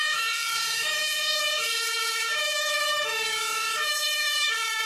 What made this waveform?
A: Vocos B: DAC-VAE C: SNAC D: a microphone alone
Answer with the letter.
B